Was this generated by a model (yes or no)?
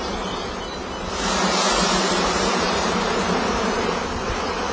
yes